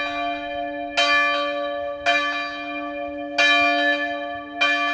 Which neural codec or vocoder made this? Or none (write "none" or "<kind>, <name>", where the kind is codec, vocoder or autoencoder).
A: none